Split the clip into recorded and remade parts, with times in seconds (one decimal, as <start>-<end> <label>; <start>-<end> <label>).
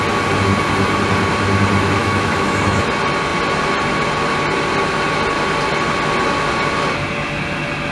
0.0-2.0 recorded; 2.0-2.8 remade; 2.8-7.9 recorded